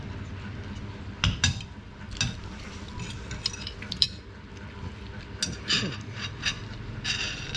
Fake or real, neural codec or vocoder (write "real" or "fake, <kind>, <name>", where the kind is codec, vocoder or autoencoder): real